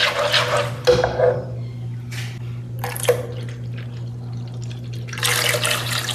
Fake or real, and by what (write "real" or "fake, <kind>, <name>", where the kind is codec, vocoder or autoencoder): real